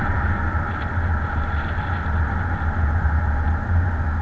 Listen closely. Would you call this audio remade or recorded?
recorded